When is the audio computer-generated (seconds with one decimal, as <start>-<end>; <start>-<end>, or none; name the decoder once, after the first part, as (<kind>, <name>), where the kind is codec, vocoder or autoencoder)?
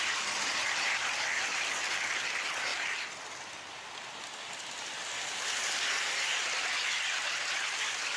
none